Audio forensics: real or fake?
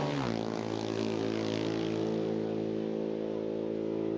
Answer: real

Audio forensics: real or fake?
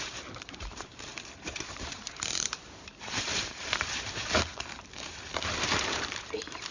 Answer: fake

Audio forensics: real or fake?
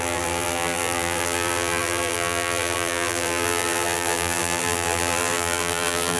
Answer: fake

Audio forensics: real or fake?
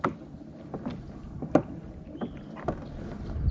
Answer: real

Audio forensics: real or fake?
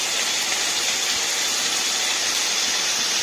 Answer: real